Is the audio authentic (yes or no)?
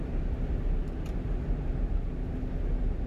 yes